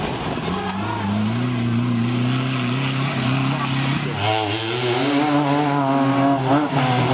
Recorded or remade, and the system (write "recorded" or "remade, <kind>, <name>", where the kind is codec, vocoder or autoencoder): recorded